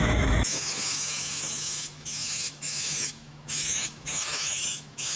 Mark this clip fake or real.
fake